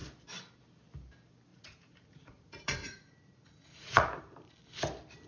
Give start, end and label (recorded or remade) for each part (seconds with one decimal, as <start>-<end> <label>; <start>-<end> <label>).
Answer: 0.0-1.5 recorded; 1.5-4.2 remade; 4.2-5.3 recorded